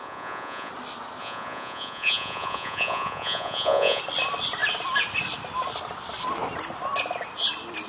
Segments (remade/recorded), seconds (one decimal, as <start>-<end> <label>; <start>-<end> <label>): 0.0-0.7 remade; 0.7-1.2 recorded; 1.2-4.0 remade; 4.0-7.9 recorded